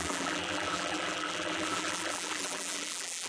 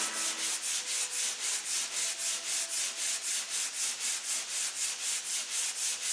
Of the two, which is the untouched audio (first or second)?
second